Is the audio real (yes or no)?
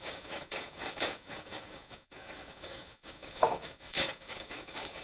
no